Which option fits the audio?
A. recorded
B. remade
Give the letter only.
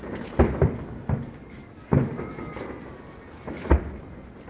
A